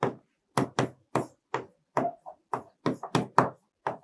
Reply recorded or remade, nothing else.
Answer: recorded